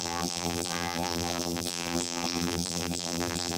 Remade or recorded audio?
remade